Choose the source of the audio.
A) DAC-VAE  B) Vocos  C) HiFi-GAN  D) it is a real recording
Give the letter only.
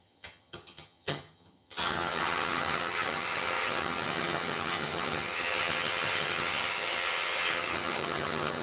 C